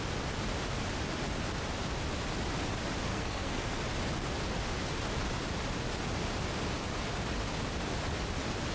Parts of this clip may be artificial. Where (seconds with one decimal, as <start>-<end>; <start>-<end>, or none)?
3.1-3.8